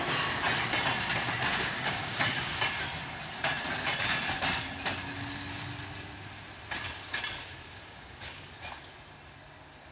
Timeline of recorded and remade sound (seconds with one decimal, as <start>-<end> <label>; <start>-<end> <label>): 0.0-1.5 recorded; 1.5-2.6 remade; 2.6-7.4 recorded; 7.4-8.5 remade; 8.5-9.9 recorded